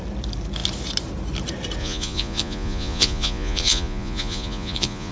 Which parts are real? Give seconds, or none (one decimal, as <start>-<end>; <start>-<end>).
0.0-1.8